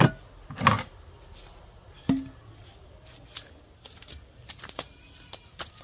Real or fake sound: real